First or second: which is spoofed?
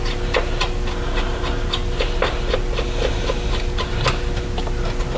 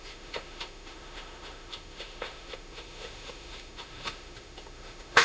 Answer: second